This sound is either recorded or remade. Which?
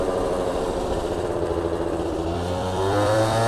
remade